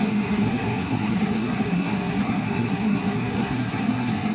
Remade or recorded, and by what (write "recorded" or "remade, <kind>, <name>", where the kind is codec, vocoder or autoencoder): remade, codec, SNAC